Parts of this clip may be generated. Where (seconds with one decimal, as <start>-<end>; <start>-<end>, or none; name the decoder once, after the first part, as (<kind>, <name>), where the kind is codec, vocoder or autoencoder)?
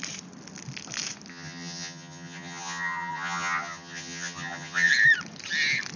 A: 1.3-4.9 (vocoder, HiFi-GAN)